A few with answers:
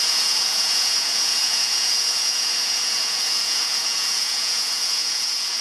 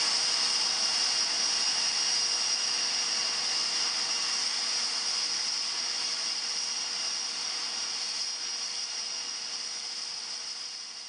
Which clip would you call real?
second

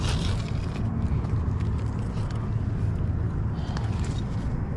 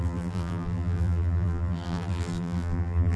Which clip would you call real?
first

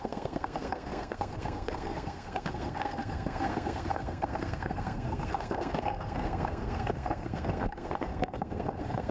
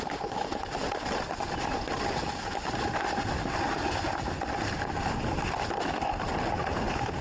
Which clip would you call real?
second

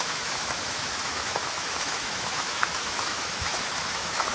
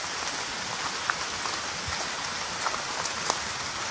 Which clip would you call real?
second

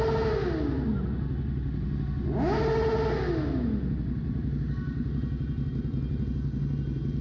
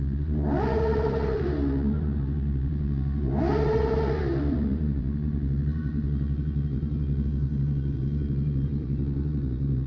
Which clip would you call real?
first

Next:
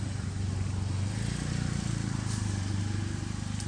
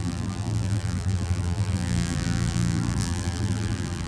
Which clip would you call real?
first